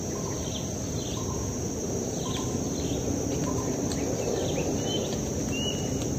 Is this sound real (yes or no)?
yes